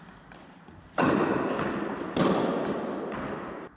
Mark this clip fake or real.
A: real